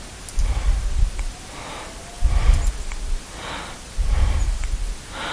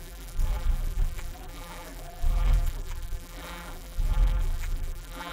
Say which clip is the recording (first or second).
first